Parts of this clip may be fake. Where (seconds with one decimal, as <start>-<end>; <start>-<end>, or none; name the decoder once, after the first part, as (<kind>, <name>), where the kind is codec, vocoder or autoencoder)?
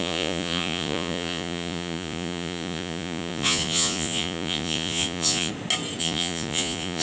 0.0-5.5 (vocoder, Vocos); 6.0-7.0